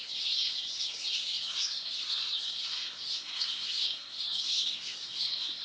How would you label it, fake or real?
fake